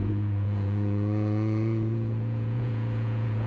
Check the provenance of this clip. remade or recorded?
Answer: remade